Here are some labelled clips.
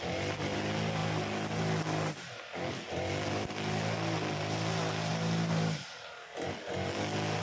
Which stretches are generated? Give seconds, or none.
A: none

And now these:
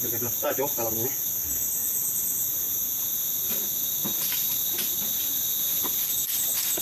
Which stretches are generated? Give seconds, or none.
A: 1.8-3.6 (vocoder, BigVGAN v2); 4.2-4.7; 5.5-6.1

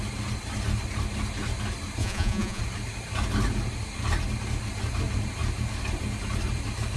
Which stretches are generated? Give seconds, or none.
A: 2.0-2.6 (vocoder, Vocos)